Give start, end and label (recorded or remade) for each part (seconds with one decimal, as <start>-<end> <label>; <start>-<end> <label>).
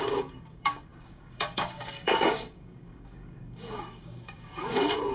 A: 0.0-5.1 remade